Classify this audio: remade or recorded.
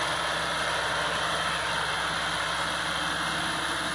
recorded